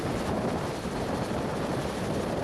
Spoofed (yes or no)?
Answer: no